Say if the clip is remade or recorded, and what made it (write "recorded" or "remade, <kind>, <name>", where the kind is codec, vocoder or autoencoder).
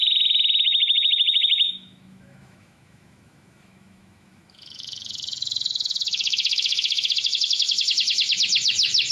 remade, autoencoder, DAC-VAE